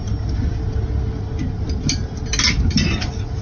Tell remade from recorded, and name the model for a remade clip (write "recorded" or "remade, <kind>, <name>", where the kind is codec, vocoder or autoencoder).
recorded